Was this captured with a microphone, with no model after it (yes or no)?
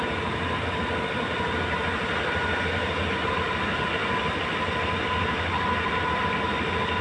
yes